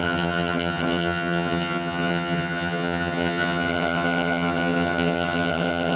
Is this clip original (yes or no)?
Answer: no